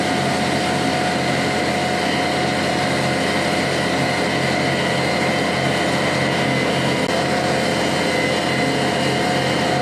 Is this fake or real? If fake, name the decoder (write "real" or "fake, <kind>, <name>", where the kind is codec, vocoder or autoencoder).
real